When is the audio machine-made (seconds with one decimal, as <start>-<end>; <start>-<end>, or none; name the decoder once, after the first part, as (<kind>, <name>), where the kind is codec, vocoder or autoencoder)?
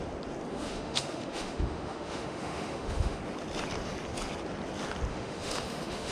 0.5-3.2 (autoencoder, DAC-VAE); 5.1-6.1